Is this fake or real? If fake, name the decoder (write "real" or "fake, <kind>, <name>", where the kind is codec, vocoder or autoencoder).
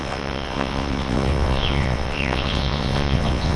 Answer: fake, vocoder, WaveNeXt